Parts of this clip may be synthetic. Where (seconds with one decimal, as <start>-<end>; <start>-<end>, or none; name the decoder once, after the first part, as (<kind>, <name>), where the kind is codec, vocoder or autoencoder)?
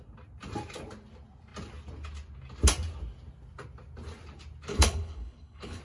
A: 4.7-5.8 (codec, HILCodec)